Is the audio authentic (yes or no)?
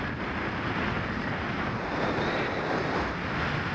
yes